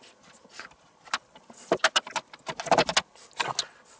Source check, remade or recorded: recorded